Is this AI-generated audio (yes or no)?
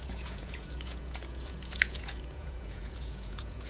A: yes